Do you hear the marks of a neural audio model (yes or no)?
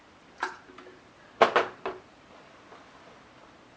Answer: no